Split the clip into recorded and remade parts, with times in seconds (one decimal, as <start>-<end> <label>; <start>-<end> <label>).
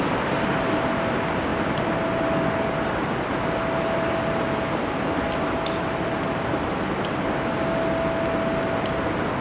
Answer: 0.0-9.4 recorded